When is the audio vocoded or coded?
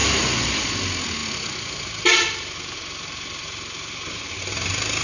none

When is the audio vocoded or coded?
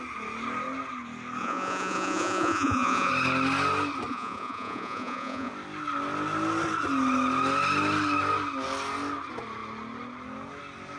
1.4-3.1; 4.1-5.5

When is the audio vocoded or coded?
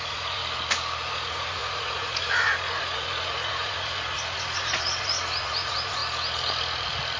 0.0-0.4; 1.1-6.0